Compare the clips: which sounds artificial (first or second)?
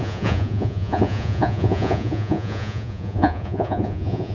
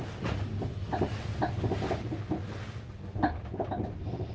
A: first